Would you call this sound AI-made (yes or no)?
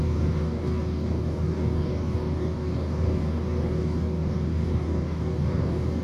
yes